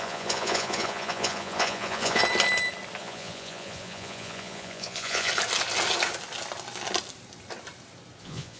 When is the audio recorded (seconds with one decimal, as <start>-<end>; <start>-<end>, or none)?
2.2-3.0; 5.3-8.2

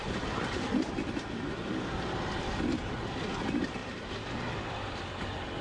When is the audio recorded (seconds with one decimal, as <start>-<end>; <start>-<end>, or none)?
none

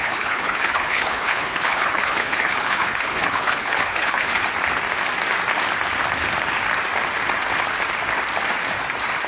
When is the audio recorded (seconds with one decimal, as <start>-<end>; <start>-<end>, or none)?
4.4-9.3

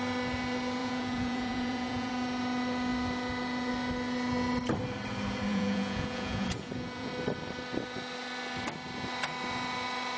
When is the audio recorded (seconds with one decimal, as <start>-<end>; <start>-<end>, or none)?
0.0-0.8; 2.1-5.5; 7.1-10.2

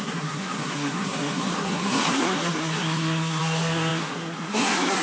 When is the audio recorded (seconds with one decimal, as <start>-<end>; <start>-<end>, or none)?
none

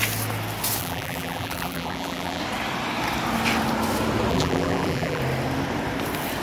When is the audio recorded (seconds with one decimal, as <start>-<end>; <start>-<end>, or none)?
0.0-0.8; 2.4-4.3; 5.2-6.4

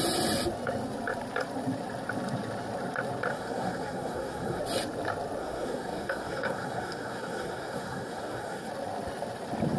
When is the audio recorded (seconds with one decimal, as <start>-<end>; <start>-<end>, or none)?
0.0-3.3; 4.6-5.4; 8.7-9.8